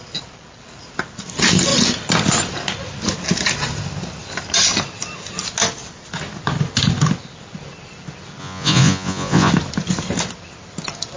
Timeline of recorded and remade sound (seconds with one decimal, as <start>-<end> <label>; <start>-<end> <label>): 0.0-8.4 recorded; 8.4-9.5 remade; 9.5-11.2 recorded